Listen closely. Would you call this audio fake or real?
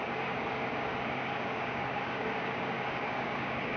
fake